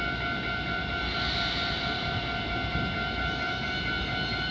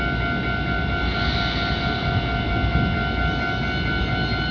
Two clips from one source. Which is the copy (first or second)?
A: first